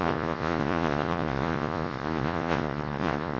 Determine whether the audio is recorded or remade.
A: remade